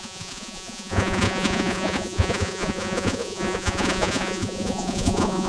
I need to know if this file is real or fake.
fake